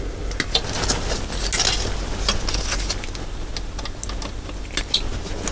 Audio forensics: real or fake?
real